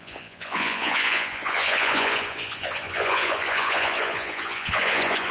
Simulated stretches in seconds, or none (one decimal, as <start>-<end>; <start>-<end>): 0.0-5.3